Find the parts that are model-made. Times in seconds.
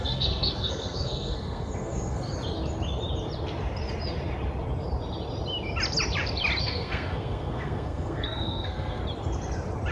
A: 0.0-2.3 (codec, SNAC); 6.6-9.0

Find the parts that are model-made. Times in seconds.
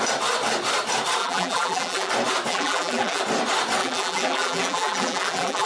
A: 1.2-2.1 (vocoder, BigVGAN v2); 2.5-3.2; 3.8-5.7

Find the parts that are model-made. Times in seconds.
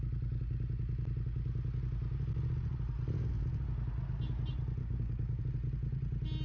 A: 4.8-5.4 (codec, DAC)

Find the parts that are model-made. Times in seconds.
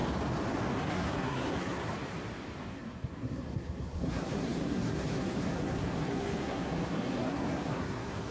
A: 0.9-1.9 (codec, SNAC); 2.6-8.3